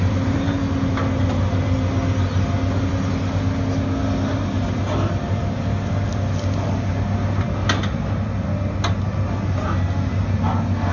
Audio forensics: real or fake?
real